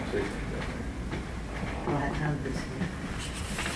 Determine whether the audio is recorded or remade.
recorded